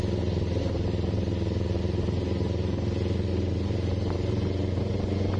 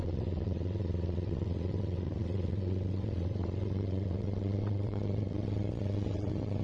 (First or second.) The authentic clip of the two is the first